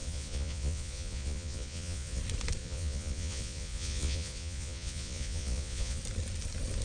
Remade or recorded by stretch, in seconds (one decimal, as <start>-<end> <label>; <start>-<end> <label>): 0.0-2.2 remade; 2.2-2.6 recorded; 2.6-6.0 remade; 6.0-6.8 recorded